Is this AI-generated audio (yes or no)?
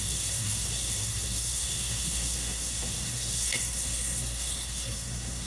yes